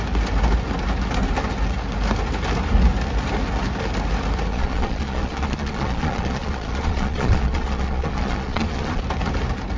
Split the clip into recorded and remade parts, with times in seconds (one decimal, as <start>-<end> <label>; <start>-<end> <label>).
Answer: 0.0-4.5 recorded; 4.5-9.0 remade; 9.0-9.8 recorded